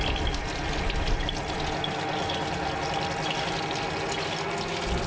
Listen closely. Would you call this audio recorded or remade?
recorded